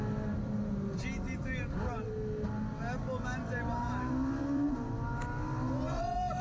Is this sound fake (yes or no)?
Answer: no